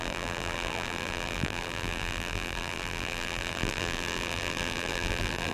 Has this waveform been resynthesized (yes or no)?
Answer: yes